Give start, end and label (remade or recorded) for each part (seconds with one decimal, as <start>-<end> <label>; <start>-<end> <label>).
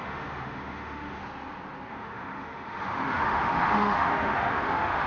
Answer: 0.0-1.2 remade; 1.2-1.9 recorded; 1.9-5.1 remade